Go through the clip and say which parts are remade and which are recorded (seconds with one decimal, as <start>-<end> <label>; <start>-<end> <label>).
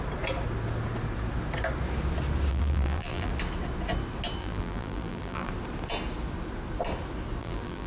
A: 0.0-2.5 recorded; 2.5-3.3 remade; 3.3-4.4 recorded; 4.4-5.5 remade; 5.5-7.4 recorded; 7.4-7.9 remade